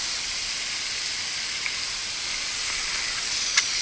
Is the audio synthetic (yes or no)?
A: no